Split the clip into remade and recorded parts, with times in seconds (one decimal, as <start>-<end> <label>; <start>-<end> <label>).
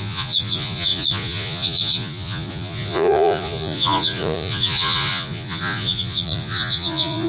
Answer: 0.0-7.3 remade